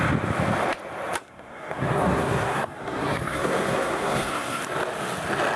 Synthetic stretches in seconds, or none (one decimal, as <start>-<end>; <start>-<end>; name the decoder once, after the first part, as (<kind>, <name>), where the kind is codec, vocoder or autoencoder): 1.2-4.6 (codec, SNAC)